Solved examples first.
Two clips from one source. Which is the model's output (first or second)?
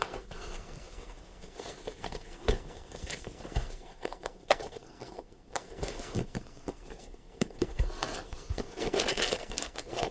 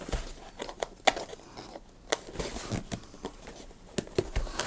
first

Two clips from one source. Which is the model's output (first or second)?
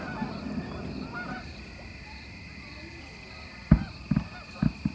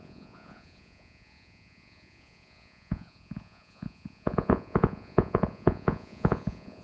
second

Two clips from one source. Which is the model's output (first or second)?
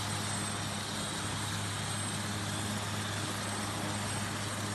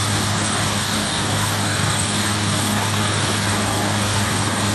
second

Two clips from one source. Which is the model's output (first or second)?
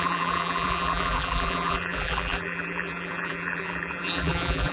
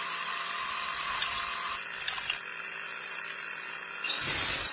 first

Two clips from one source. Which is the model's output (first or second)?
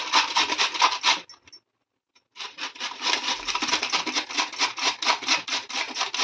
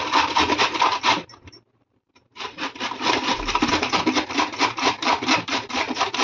second